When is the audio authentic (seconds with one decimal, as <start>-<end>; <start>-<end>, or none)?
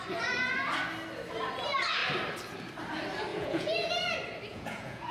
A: 0.0-3.3; 3.9-4.5